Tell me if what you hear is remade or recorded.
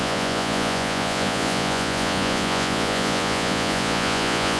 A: remade